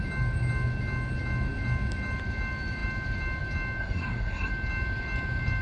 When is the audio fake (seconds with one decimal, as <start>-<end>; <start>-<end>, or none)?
3.8-4.5